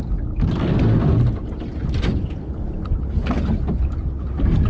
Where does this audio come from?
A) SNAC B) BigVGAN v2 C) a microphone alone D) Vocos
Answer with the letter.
C